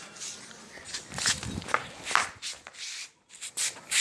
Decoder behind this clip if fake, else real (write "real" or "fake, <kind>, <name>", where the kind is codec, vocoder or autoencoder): real